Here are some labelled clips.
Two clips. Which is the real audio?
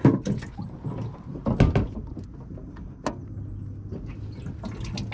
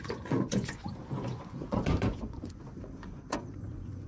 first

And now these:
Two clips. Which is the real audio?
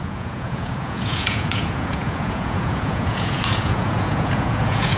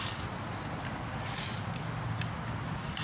second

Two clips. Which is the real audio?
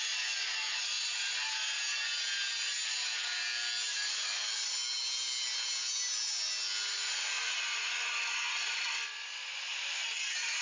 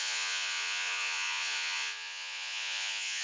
first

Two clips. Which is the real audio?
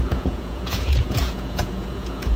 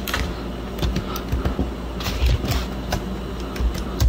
second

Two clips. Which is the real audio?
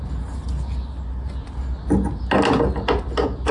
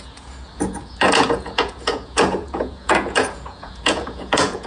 first